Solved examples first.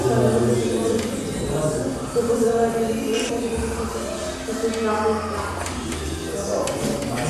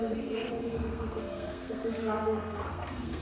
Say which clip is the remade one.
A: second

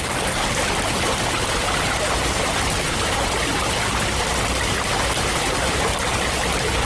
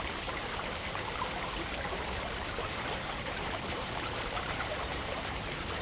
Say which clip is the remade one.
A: second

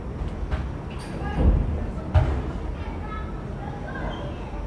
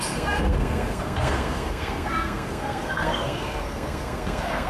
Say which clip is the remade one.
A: second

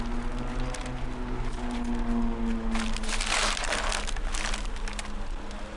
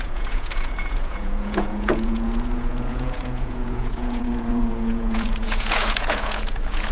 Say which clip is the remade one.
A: second